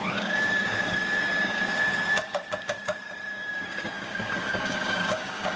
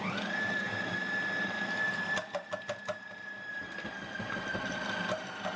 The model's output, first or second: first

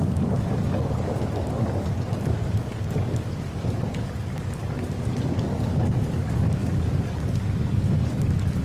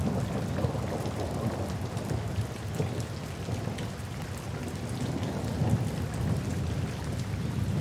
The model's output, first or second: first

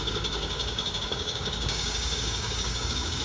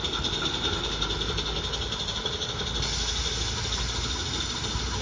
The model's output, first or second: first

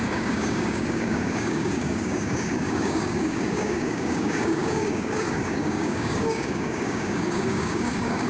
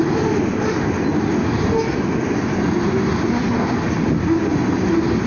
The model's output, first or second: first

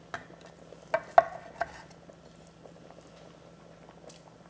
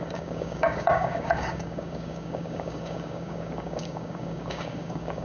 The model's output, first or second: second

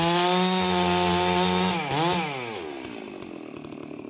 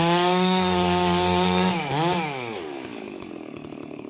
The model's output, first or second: second